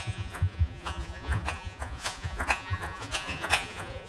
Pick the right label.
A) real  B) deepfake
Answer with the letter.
B